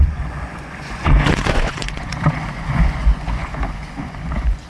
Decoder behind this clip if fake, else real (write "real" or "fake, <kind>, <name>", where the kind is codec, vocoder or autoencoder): fake, vocoder, Vocos